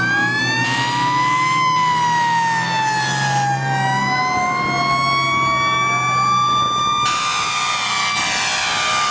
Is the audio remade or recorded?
recorded